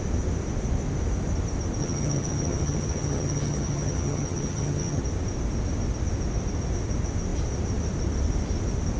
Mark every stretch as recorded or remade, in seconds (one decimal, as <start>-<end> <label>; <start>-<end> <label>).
0.0-1.8 recorded; 1.8-5.0 remade; 5.0-9.0 recorded